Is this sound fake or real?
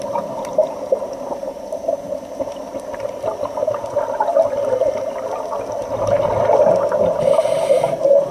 real